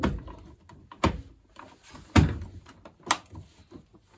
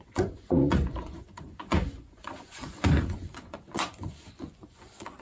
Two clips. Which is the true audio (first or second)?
first